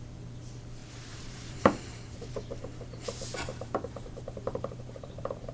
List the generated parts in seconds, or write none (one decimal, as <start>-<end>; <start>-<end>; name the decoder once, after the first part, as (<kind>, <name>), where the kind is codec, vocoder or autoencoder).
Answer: 0.8-2.3 (vocoder, BigVGAN v2); 3.5-5.5